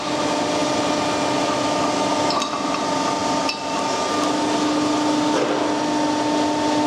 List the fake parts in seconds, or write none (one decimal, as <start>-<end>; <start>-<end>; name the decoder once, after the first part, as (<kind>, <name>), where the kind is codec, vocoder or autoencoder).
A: none